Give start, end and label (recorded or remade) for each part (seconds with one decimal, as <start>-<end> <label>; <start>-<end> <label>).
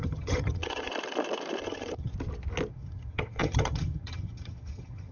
0.0-0.9 remade; 0.9-1.6 recorded; 1.6-2.1 remade; 2.1-2.7 recorded; 2.7-5.1 remade